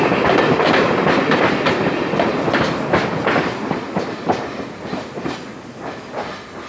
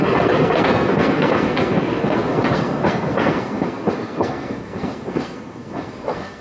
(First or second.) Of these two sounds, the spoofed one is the second